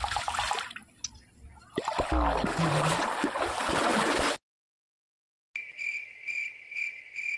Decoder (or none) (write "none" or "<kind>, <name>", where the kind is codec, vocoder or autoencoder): none